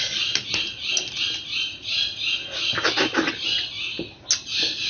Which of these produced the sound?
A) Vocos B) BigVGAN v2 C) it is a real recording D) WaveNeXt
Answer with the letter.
C